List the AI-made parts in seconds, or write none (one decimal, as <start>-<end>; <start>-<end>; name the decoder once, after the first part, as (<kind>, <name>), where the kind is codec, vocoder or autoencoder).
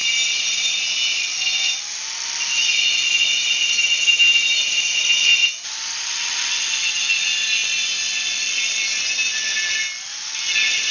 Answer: none